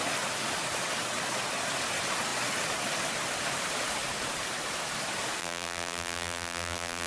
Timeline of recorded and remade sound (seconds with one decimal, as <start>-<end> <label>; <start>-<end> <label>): 0.0-5.4 recorded; 5.4-7.1 remade